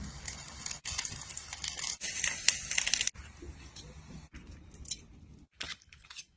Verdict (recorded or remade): recorded